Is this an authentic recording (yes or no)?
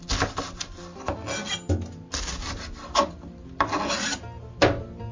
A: yes